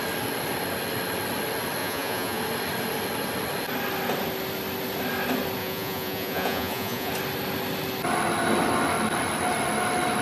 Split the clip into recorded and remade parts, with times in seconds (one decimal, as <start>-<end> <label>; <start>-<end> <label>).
0.0-1.8 recorded; 1.8-2.4 remade; 2.4-5.6 recorded; 5.6-7.1 remade; 7.1-10.2 recorded